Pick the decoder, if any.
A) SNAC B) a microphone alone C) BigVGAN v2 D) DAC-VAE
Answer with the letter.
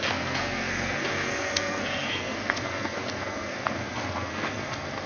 A